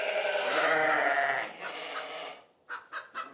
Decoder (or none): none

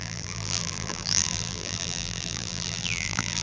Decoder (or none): vocoder, BigVGAN v2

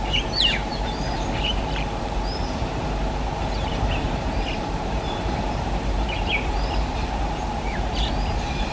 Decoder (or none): vocoder, BigVGAN v2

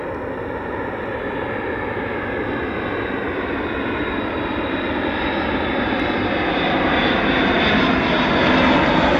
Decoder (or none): none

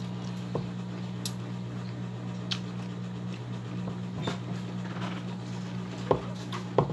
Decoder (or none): none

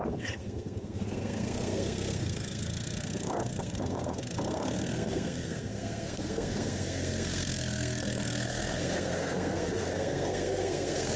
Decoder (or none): codec, SNAC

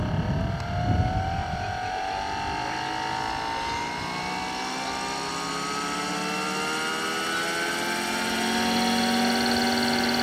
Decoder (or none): none